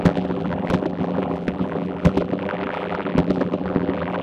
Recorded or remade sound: remade